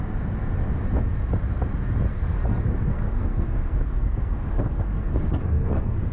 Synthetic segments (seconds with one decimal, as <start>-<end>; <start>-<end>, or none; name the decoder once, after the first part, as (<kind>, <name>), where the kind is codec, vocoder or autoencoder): 2.1-6.1 (codec, SNAC)